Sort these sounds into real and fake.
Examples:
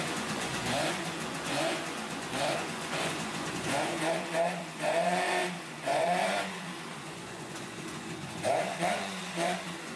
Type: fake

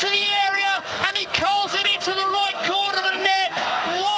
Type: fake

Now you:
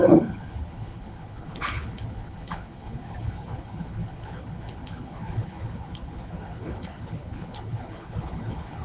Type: fake